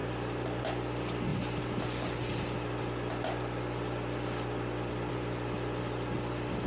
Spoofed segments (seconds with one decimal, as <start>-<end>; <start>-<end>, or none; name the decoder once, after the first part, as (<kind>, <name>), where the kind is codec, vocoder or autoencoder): 0.0-0.6 (vocoder, BigVGAN v2)